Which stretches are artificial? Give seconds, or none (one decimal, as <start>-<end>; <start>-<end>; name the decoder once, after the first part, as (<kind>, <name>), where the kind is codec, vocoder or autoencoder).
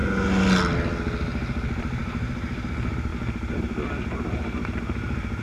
none